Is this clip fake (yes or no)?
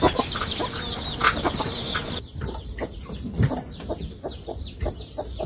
no